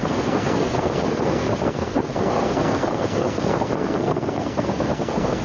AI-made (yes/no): yes